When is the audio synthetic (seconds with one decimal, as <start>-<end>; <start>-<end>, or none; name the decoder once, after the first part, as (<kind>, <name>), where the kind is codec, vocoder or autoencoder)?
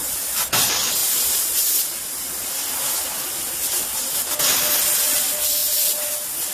none